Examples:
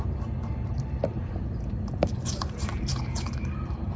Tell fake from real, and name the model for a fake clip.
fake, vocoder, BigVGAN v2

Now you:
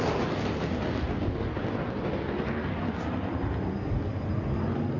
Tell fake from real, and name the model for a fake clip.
real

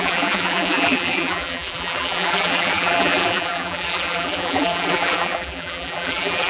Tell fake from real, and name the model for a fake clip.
fake, vocoder, BigVGAN v2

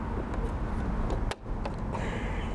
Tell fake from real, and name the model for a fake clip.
real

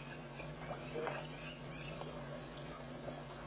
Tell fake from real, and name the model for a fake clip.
fake, vocoder, Vocos